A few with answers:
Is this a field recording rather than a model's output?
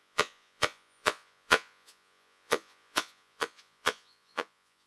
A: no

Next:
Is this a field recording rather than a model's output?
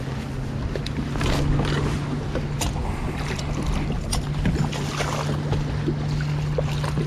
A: yes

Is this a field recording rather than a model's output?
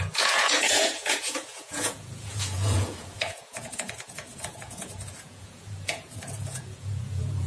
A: no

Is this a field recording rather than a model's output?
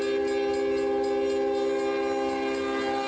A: yes